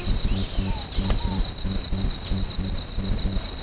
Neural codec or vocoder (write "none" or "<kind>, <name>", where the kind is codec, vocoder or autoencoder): none